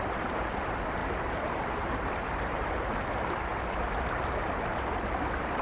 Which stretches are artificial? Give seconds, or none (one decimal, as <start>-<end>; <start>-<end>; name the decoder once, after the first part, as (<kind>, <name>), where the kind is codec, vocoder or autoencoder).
1.0-2.7 (vocoder, BigVGAN v2)